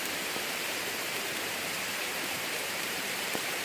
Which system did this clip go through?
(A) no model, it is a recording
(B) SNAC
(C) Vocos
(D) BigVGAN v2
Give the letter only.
D